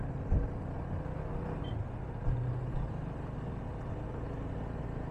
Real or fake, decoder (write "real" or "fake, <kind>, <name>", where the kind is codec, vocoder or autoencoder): real